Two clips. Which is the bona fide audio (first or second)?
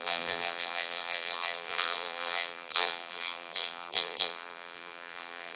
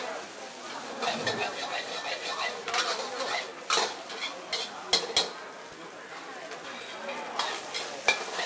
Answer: second